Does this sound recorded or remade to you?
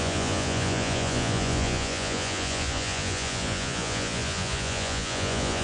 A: remade